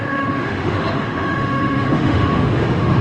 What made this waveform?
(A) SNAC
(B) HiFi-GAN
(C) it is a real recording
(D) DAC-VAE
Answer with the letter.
D